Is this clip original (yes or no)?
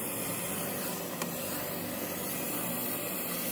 no